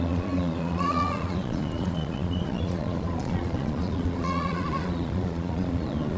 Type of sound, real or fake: fake